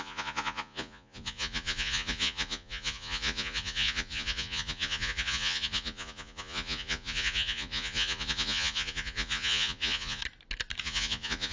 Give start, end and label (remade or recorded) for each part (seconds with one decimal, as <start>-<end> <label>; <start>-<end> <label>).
0.0-10.2 remade; 10.2-10.8 recorded; 10.8-11.5 remade